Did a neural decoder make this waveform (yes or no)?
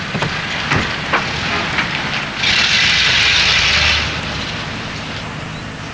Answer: no